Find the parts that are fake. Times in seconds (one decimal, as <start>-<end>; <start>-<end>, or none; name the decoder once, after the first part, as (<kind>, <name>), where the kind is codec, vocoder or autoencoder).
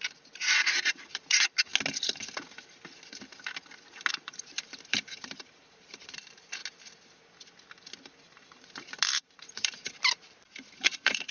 0.0-1.7 (vocoder, BigVGAN v2); 4.1-6.6; 8.1-11.3